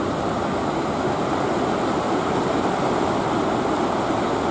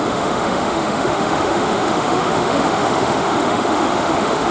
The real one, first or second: first